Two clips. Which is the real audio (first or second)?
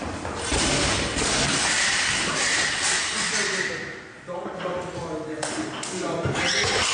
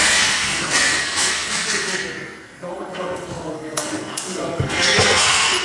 first